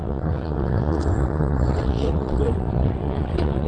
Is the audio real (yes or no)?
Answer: no